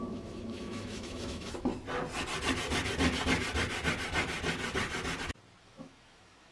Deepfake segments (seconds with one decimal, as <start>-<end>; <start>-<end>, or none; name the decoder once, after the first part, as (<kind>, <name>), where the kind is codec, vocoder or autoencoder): 0.0-1.7 (autoencoder, DAC-VAE); 5.6-6.5